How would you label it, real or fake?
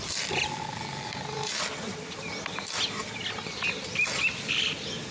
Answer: real